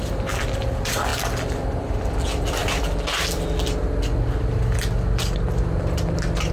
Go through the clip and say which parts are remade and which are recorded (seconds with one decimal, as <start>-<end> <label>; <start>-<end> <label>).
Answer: 0.0-6.5 recorded